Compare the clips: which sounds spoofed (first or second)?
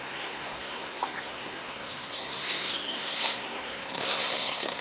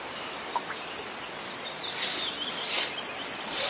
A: first